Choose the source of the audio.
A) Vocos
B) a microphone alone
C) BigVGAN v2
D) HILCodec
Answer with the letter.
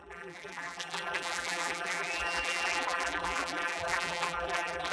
C